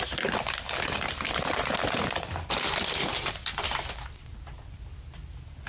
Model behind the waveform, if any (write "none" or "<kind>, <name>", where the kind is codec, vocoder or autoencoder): none